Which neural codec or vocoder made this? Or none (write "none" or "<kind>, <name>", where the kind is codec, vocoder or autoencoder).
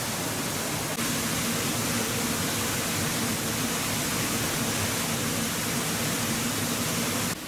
none